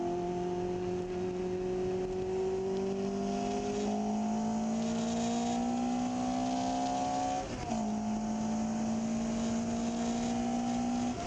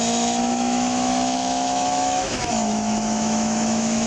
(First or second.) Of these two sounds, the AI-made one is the second